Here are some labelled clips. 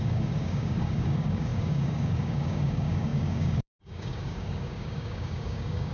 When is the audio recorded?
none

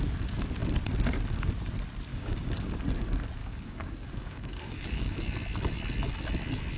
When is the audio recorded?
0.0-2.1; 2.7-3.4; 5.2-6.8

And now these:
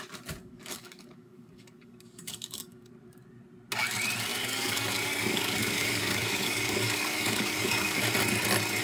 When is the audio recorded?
0.0-0.4; 2.9-4.3; 8.0-8.8

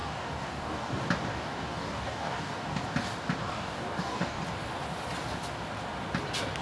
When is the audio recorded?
0.9-1.3; 2.8-3.4; 4.4-6.6